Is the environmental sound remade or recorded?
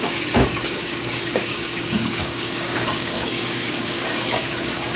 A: remade